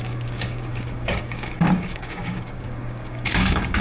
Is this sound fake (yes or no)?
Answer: yes